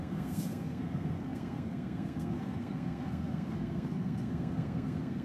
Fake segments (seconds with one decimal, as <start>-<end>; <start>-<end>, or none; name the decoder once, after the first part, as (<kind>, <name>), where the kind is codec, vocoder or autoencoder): 0.0-5.2 (codec, SNAC)

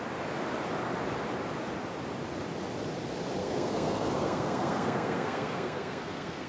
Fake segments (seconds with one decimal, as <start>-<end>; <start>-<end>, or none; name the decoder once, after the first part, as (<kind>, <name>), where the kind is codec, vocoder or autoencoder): 3.4-6.5 (codec, SNAC)

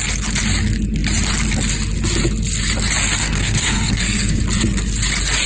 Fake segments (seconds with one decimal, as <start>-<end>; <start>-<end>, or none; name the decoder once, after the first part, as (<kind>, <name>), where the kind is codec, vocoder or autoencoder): 3.2-4.4 (codec, SNAC)

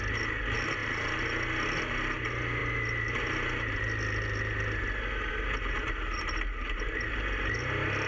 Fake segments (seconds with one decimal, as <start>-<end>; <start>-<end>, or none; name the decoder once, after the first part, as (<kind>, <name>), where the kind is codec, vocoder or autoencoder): none

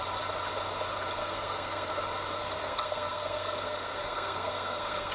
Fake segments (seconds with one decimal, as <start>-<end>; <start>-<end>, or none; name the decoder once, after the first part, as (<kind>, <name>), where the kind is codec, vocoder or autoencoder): 1.2-1.9 (codec, SNAC); 2.4-5.1

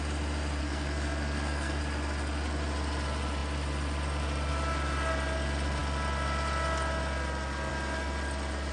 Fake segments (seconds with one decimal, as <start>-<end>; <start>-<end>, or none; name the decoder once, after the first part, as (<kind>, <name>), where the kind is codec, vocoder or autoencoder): 0.6-1.8 (codec, SNAC)